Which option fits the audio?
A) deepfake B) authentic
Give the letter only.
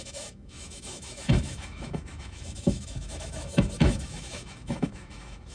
A